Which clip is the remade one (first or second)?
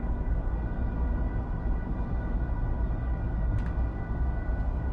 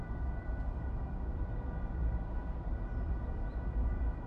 second